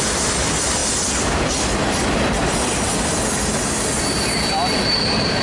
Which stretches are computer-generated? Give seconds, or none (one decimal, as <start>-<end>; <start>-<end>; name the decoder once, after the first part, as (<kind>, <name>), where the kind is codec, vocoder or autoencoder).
none